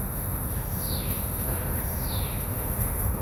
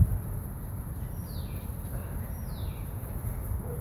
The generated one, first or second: first